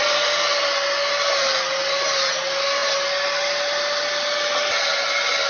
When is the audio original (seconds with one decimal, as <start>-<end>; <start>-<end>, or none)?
0.0-5.5